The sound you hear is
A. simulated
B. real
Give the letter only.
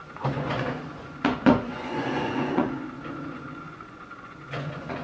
A